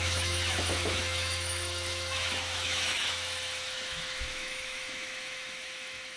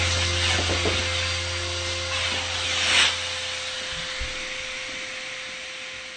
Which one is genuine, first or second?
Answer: second